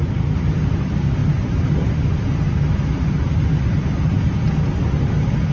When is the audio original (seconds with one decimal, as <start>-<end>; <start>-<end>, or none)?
0.0-5.5